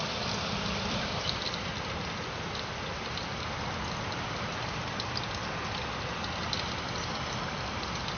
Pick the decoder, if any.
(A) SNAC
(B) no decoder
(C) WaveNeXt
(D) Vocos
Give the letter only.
B